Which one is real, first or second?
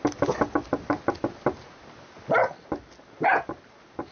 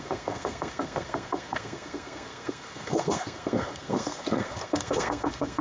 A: first